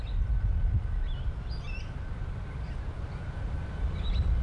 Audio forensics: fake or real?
real